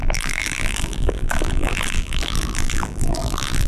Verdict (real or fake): fake